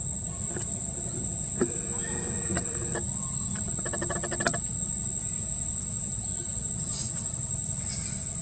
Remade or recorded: recorded